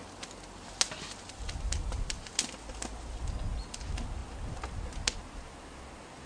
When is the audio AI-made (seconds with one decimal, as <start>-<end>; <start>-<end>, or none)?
none